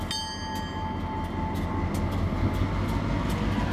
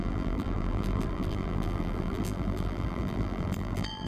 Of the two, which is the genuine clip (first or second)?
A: first